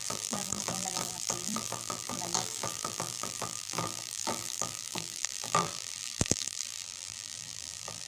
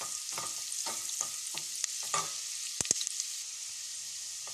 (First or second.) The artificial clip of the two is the first